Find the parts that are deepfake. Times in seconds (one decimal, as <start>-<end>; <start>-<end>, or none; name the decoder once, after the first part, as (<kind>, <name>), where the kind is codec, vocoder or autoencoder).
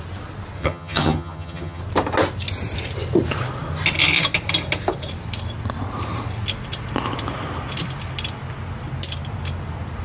0.6-1.8 (vocoder, HiFi-GAN)